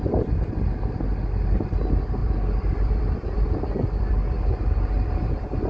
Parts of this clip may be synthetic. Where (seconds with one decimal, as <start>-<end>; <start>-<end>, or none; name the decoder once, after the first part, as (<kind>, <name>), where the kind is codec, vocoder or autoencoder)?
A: 2.2-5.7 (vocoder, BigVGAN v2)